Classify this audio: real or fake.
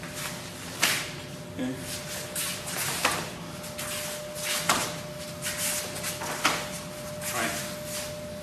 real